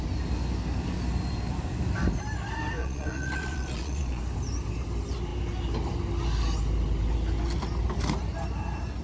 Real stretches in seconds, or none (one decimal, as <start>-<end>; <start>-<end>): 0.0-2.8; 4.2-9.0

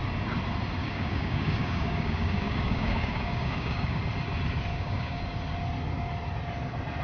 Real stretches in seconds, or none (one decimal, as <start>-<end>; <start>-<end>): 0.0-0.8; 4.0-4.7; 5.2-7.0

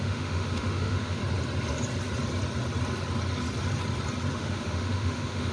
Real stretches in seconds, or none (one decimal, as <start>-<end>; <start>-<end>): 1.2-4.3

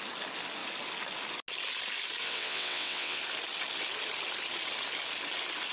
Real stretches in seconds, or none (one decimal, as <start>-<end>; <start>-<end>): 0.0-2.2; 3.2-5.7

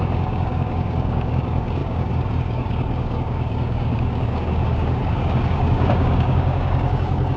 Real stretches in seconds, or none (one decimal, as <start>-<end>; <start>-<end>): none

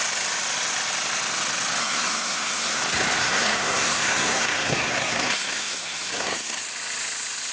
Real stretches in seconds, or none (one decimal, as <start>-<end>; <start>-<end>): 0.0-1.8; 2.8-3.2; 6.6-7.5